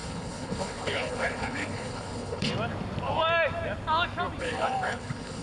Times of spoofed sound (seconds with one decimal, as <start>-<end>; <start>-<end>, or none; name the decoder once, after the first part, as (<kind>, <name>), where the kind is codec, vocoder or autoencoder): 0.0-2.5 (codec, HILCodec); 4.4-5.4